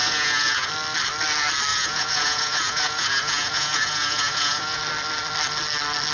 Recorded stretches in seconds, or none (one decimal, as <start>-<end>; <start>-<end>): 0.7-1.7; 4.8-6.1

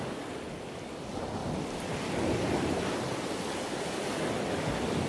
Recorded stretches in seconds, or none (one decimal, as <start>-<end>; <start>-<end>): 0.0-5.1

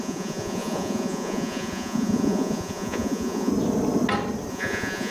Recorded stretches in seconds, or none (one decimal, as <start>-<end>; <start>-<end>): 3.5-4.5